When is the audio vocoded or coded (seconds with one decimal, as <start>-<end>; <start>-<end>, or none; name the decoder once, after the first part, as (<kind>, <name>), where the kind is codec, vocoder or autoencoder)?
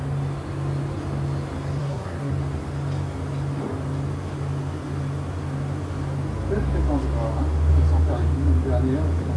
1.8-2.3 (codec, SNAC)